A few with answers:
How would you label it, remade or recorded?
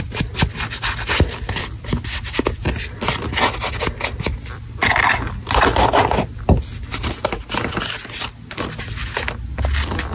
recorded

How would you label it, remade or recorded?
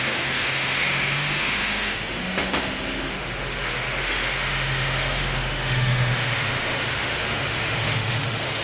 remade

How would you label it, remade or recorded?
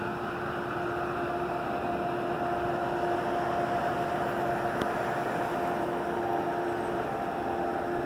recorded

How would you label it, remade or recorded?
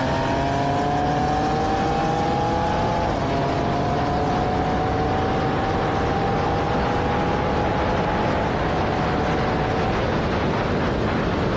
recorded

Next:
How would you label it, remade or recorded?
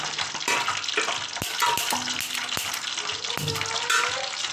recorded